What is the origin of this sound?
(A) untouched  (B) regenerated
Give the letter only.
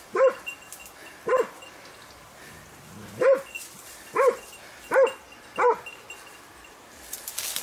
A